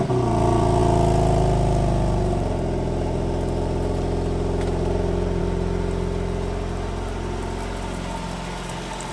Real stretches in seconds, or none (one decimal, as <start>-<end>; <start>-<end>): 0.0-9.1

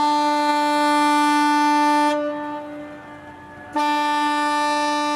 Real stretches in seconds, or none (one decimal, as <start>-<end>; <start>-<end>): 0.0-5.2

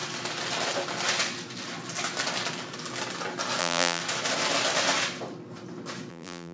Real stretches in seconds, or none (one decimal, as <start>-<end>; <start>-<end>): 0.0-3.6; 4.0-6.1

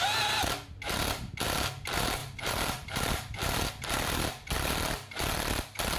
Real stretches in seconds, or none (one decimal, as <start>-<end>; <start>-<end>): 0.0-2.2

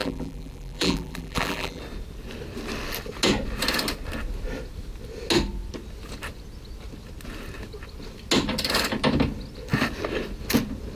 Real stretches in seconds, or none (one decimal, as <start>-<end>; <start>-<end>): 1.8-11.0